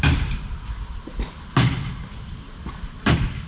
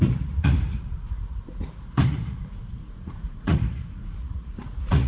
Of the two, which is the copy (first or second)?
second